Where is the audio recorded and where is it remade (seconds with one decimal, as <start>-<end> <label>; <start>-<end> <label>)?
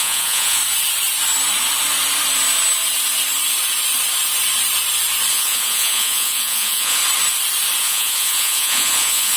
0.0-0.6 remade; 0.6-5.3 recorded; 5.3-7.0 remade; 7.0-7.8 recorded; 7.8-9.4 remade